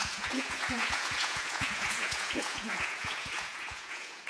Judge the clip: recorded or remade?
remade